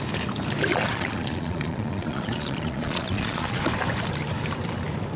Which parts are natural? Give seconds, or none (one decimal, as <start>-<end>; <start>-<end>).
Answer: 0.0-0.7; 3.6-5.2